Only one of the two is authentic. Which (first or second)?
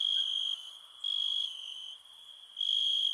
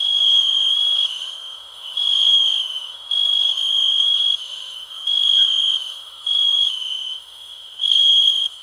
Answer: first